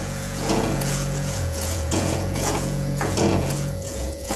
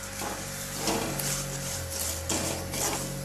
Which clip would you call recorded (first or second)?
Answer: second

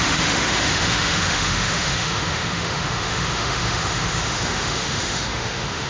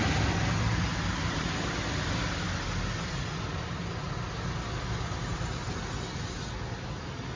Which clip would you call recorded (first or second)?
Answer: second